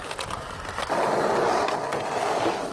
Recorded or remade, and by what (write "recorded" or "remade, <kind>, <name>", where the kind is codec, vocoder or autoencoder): recorded